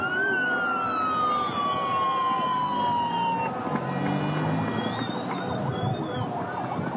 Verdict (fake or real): real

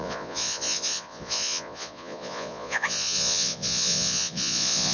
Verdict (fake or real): fake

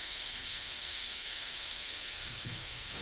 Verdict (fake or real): fake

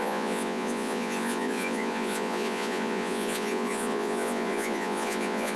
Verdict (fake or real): fake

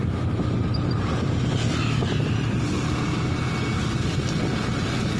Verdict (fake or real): real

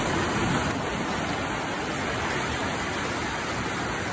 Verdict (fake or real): real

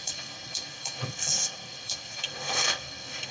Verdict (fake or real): fake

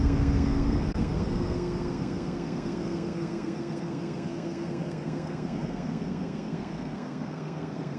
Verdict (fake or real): fake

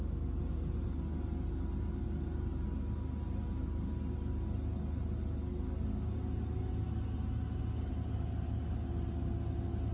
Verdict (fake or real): real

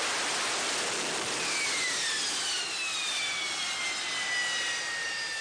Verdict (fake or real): real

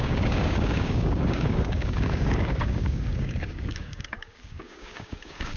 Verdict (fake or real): fake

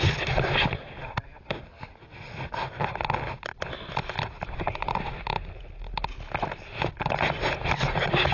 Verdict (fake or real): real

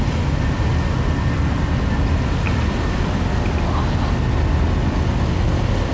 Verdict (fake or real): real